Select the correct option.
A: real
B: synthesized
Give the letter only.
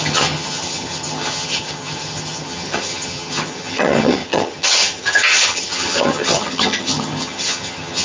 B